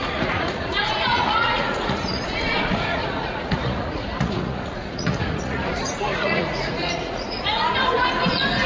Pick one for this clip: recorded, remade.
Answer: remade